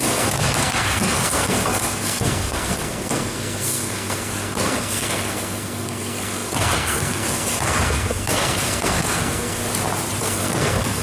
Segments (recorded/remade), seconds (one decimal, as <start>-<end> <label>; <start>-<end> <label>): 0.0-9.6 remade; 9.6-10.2 recorded; 10.2-11.0 remade